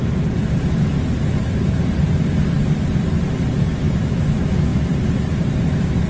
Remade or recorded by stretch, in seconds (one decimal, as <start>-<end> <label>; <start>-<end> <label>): 0.0-3.7 recorded; 3.7-4.7 remade; 4.7-6.1 recorded